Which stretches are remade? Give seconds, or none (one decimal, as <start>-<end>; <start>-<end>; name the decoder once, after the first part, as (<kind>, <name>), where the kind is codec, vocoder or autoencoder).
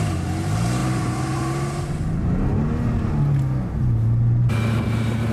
0.8-1.4 (vocoder, BigVGAN v2)